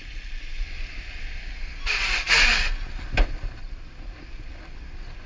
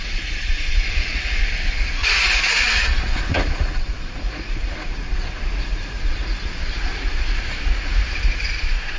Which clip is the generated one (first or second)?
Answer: second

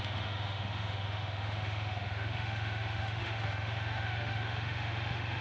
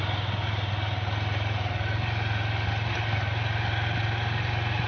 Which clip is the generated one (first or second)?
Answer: first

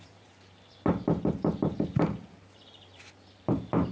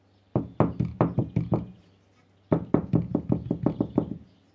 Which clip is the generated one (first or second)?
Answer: first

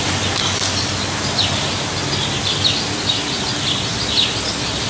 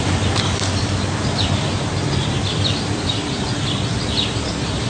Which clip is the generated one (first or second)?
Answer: second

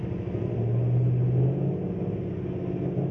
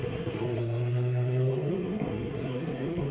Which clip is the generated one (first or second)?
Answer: second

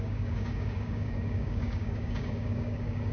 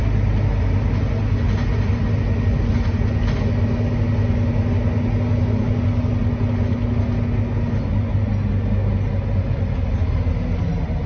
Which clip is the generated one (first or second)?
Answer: first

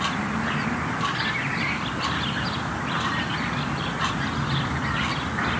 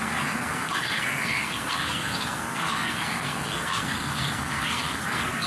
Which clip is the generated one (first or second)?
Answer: second